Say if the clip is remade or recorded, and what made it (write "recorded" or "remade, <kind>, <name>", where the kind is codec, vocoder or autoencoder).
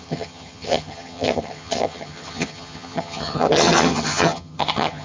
remade, vocoder, HiFi-GAN